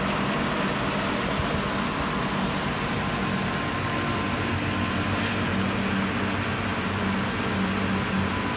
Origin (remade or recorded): recorded